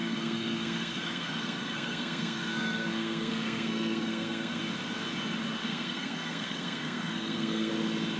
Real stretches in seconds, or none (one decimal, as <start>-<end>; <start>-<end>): 4.6-5.6; 7.7-8.2